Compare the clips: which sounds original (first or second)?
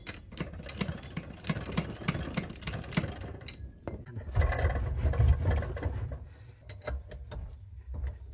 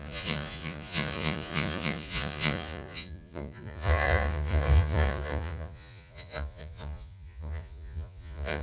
first